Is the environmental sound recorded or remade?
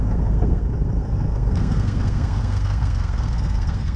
remade